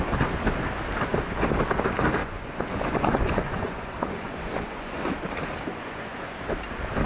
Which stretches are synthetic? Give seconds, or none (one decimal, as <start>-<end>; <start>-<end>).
2.2-5.0; 5.7-6.5